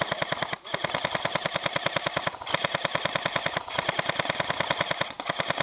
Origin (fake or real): real